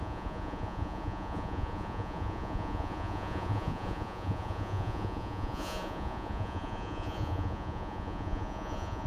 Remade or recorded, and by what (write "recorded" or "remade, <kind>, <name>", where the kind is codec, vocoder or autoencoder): remade, vocoder, Vocos